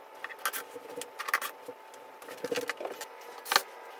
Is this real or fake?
real